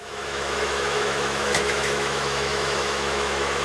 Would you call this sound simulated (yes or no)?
yes